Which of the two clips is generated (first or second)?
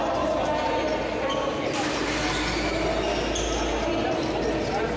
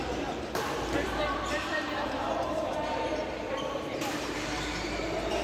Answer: second